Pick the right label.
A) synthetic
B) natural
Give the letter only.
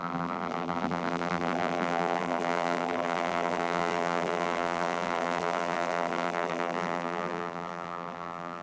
A